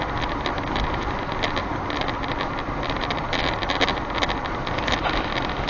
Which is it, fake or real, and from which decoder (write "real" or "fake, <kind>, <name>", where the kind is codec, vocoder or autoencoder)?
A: real